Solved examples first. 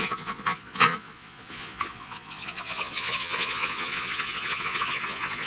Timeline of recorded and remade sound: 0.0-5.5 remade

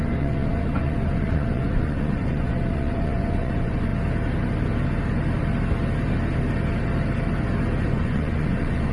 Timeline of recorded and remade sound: 0.0-3.9 remade; 3.9-7.9 recorded; 7.9-8.9 remade

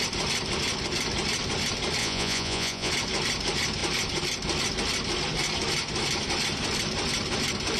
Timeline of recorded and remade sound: 0.0-2.0 recorded; 2.0-2.9 remade; 2.9-7.8 recorded